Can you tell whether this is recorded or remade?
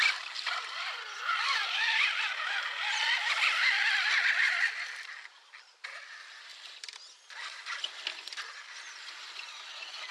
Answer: recorded